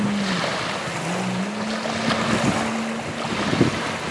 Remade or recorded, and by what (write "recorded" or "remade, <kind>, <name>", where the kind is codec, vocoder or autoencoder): recorded